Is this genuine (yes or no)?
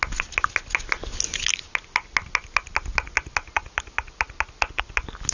yes